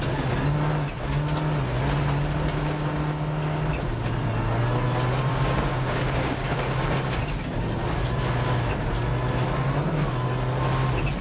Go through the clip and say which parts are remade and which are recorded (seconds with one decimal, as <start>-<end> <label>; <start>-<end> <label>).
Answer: 0.0-5.3 recorded; 5.3-6.6 remade; 6.6-11.2 recorded